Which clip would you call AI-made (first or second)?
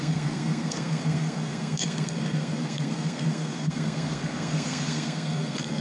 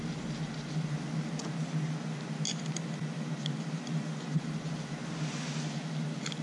first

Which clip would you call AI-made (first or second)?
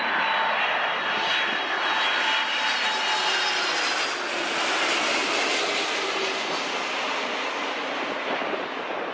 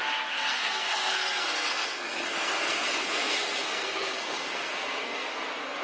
second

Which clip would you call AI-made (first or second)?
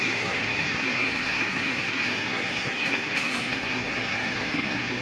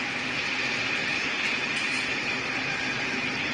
first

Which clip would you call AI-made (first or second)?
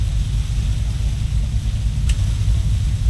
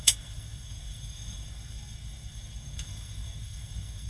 second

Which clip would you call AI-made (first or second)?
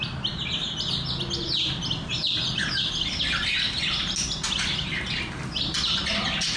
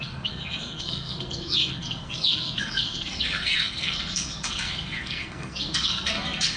second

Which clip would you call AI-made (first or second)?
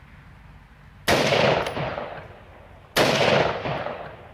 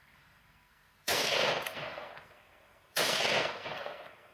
second